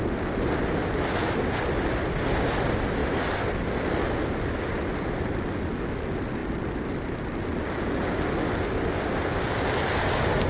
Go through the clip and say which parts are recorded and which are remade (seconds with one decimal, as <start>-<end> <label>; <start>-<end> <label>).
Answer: 0.0-10.5 recorded